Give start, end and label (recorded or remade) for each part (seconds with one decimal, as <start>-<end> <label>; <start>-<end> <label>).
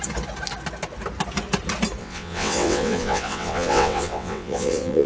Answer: 0.0-2.0 recorded; 2.0-5.1 remade